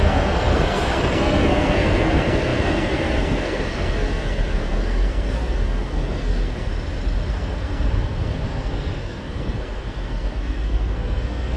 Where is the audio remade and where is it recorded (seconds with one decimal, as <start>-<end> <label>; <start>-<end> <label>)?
0.0-6.7 remade; 6.7-7.3 recorded; 7.3-11.6 remade